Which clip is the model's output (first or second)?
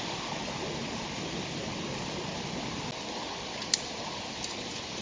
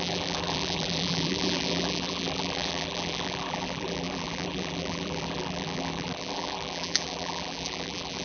second